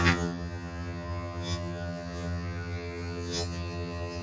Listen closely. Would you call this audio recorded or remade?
remade